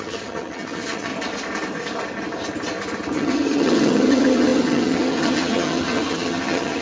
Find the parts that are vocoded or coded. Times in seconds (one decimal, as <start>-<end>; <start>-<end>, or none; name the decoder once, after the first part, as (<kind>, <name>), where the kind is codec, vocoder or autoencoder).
0.0-1.1 (vocoder, HiFi-GAN); 3.1-6.8